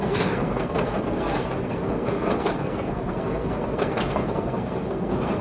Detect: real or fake fake